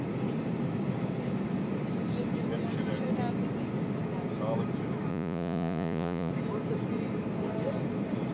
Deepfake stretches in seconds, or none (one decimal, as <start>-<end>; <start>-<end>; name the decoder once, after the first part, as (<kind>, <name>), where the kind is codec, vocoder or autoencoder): 5.1-6.3 (vocoder, Vocos)